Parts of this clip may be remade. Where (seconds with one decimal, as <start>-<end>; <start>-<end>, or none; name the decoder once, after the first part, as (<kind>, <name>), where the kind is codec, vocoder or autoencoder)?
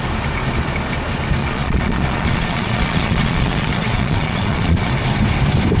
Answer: 1.4-4.9 (vocoder, Vocos)